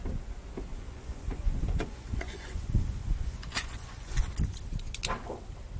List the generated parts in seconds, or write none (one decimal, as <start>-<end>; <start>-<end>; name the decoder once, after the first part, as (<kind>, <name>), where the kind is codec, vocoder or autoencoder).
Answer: 0.7-4.2 (vocoder, Vocos)